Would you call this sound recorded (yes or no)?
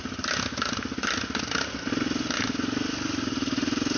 yes